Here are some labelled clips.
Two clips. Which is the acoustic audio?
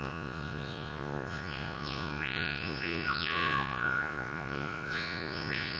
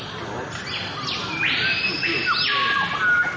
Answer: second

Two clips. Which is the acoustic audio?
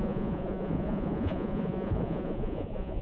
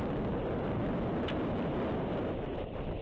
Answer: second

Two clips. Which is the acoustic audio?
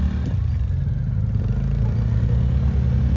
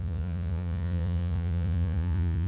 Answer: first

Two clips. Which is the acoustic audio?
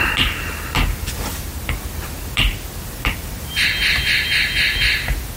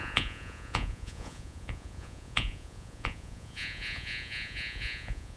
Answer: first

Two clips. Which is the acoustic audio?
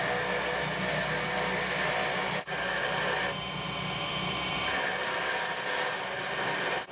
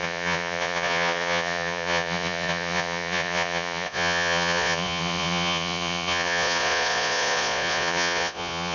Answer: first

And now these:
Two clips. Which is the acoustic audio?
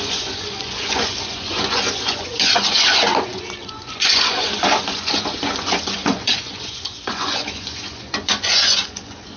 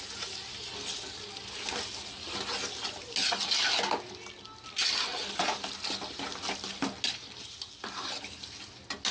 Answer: second